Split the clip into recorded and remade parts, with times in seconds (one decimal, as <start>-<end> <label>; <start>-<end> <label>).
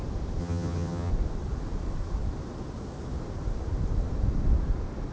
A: 0.0-0.4 recorded; 0.4-1.1 remade; 1.1-5.1 recorded